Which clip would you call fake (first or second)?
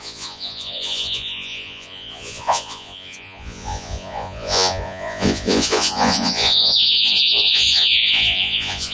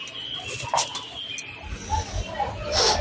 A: first